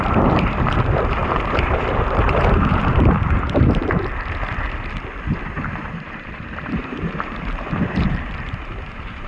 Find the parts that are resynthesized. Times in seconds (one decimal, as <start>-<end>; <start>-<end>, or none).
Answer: 0.0-4.1; 5.7-9.3